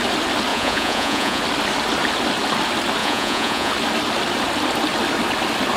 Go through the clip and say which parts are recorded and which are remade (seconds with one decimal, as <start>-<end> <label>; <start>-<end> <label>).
0.0-0.5 recorded; 0.5-1.4 remade; 1.4-3.0 recorded; 3.0-3.7 remade; 3.7-5.8 recorded